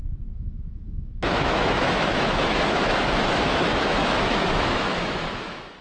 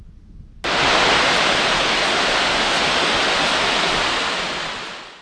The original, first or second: second